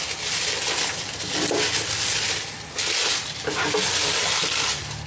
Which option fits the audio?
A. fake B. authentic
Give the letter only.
B